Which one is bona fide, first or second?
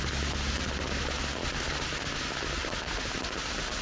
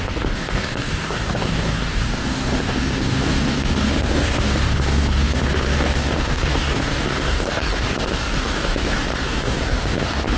first